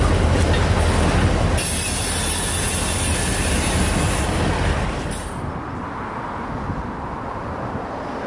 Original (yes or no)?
yes